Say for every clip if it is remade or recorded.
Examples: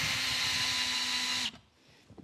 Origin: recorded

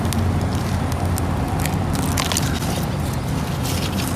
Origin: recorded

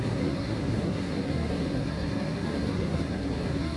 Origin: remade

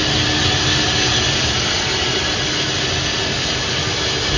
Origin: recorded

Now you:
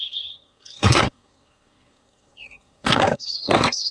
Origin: remade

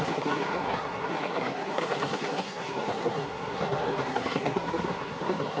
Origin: remade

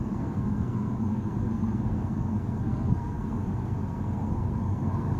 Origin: remade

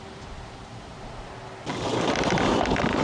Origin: recorded